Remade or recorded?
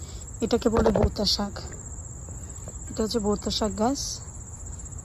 recorded